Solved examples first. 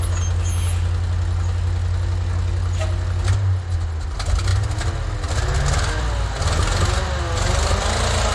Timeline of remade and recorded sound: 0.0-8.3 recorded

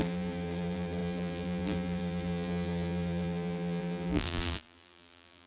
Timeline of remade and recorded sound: 0.0-5.5 remade

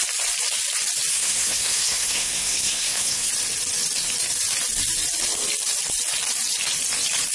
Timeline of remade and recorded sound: 0.0-1.1 recorded; 1.1-3.3 remade; 3.3-7.3 recorded

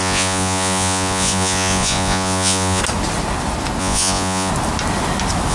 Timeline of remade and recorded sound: 0.0-2.8 remade; 2.8-3.8 recorded; 3.8-4.5 remade; 4.5-5.5 recorded

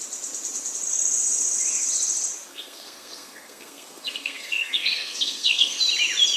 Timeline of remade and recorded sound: 0.0-2.5 recorded; 2.5-5.8 remade; 5.8-6.4 recorded

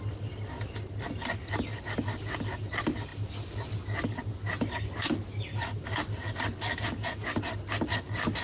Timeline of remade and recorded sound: 0.0-8.4 recorded